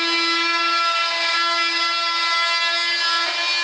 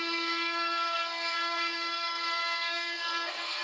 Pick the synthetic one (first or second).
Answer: second